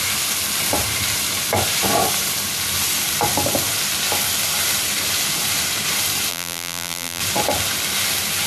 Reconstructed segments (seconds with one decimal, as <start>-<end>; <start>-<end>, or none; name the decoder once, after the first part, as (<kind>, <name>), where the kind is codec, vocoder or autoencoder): 6.3-7.2 (vocoder, BigVGAN v2)